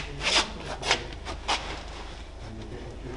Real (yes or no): yes